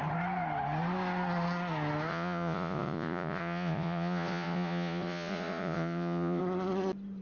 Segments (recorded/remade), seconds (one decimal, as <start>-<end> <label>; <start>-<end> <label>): 0.0-2.1 recorded; 2.1-6.4 remade; 6.4-7.2 recorded